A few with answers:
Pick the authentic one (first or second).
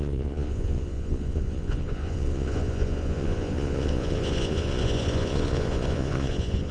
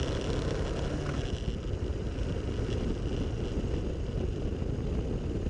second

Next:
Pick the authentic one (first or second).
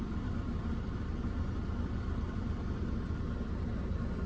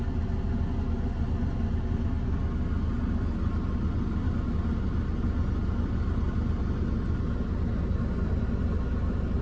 second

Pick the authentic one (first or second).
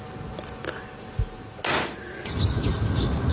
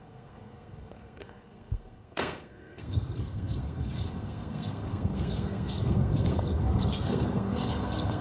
first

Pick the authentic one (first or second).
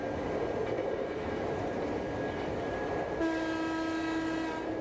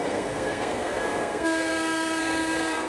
first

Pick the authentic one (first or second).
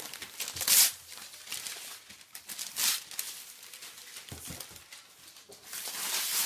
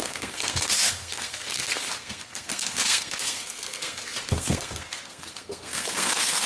first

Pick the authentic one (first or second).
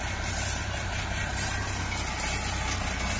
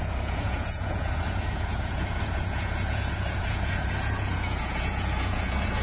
first